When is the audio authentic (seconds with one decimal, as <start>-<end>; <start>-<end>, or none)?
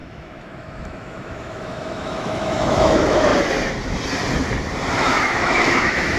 3.3-4.9